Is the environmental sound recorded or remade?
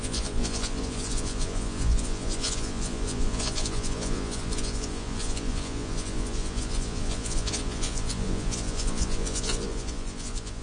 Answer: remade